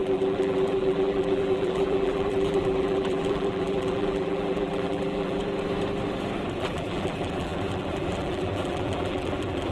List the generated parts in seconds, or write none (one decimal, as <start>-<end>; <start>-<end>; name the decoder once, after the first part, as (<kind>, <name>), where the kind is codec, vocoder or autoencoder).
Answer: 0.0-5.4 (vocoder, BigVGAN v2); 6.6-9.7